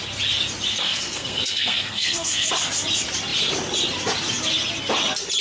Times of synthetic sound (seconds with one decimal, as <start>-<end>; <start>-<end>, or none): 0.7-2.5